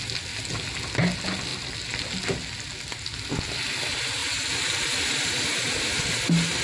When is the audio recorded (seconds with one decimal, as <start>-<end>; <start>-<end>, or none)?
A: 0.0-6.6